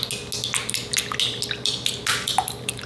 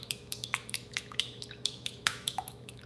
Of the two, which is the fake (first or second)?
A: second